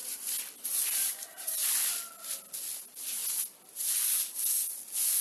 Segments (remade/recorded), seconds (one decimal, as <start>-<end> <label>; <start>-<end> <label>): 0.0-0.6 recorded; 0.6-1.6 remade; 1.6-2.8 recorded; 2.8-3.2 remade; 3.2-5.2 recorded